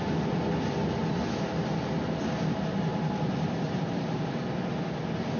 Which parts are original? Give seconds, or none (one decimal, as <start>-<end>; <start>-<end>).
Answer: 0.0-2.9; 4.3-5.4